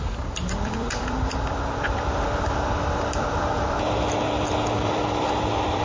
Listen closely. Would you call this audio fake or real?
fake